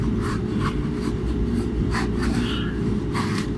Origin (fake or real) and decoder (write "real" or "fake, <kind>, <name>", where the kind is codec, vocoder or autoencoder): fake, vocoder, BigVGAN v2